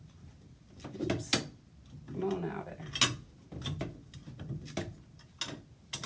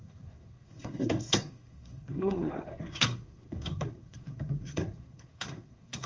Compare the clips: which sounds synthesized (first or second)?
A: second